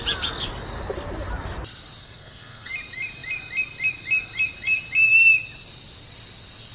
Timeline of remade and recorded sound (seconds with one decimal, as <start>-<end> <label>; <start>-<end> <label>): 0.0-2.0 recorded; 2.0-2.7 remade; 2.7-6.7 recorded